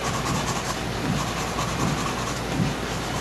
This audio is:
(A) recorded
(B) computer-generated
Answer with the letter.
A